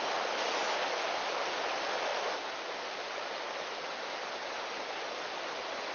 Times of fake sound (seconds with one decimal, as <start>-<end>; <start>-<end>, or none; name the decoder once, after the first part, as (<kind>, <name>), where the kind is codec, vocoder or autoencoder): none